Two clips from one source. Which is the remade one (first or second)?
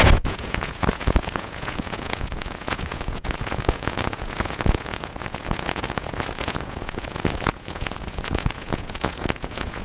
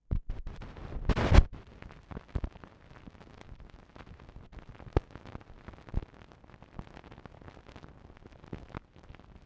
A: first